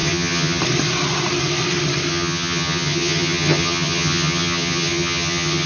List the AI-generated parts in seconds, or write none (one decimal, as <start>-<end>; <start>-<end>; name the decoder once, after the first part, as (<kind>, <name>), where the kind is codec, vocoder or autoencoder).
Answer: 0.0-0.6 (vocoder, HiFi-GAN); 2.1-5.7